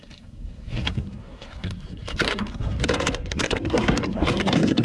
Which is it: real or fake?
fake